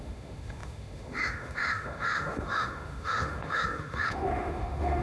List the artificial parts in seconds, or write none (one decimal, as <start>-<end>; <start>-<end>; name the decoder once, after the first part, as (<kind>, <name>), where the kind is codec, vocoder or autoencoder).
0.0-5.0 (autoencoder, DAC-VAE)